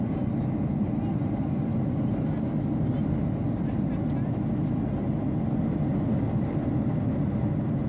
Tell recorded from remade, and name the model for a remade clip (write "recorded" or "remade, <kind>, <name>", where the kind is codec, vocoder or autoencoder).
recorded